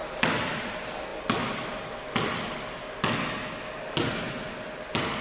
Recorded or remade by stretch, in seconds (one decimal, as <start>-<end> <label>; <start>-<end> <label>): 0.0-0.7 remade; 0.7-1.1 recorded; 1.1-1.9 remade; 1.9-5.2 recorded